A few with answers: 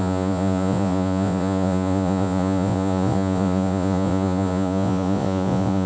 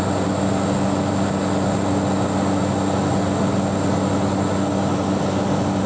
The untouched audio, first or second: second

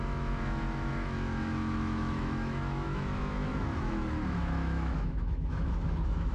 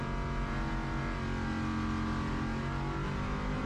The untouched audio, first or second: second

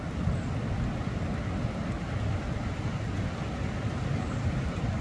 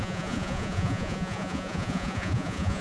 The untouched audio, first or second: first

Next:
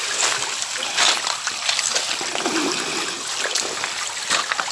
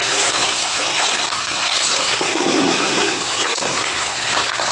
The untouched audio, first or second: first